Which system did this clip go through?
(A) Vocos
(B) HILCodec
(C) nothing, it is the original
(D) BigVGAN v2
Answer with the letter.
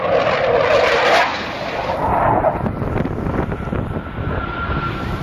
D